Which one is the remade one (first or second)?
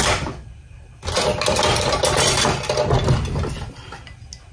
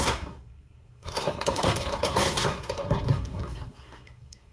second